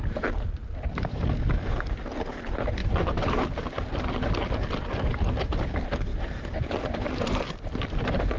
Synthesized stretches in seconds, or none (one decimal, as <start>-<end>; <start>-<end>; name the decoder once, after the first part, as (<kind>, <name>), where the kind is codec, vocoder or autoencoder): 0.6-1.2 (vocoder, BigVGAN v2); 2.8-3.4; 6.1-7.4